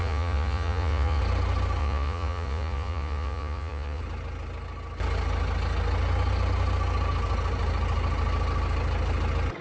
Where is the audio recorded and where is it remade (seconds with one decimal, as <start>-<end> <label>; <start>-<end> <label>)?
0.0-1.2 remade; 1.2-1.8 recorded; 1.8-4.0 remade; 4.0-9.6 recorded